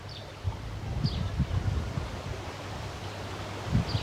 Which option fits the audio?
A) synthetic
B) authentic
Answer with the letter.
B